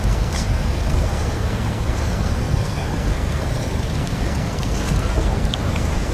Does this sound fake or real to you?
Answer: fake